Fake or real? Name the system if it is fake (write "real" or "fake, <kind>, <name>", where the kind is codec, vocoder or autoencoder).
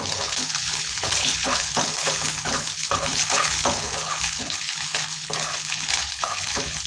fake, codec, HILCodec